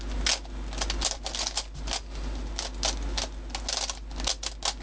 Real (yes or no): yes